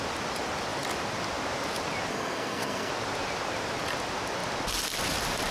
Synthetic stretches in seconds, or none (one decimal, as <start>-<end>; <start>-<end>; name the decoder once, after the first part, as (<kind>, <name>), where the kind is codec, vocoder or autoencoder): 2.1-2.9 (codec, SNAC)